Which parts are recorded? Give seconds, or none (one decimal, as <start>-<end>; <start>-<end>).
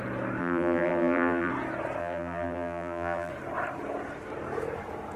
0.0-0.4; 1.5-2.0; 3.3-5.2